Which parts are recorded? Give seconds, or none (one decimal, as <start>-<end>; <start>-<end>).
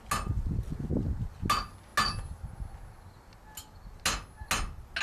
0.0-5.0